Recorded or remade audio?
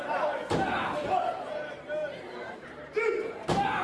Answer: remade